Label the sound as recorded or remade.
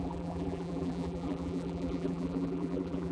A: remade